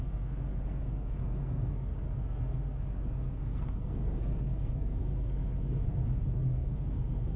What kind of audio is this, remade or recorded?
remade